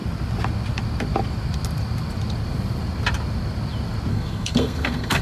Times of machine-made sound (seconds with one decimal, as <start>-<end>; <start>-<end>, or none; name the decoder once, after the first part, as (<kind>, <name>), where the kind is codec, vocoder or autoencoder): 4.1-5.2 (codec, SNAC)